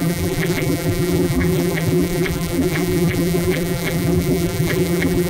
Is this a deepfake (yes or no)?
yes